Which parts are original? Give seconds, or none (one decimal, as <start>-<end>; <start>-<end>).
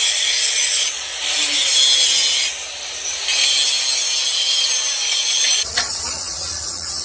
1.1-5.3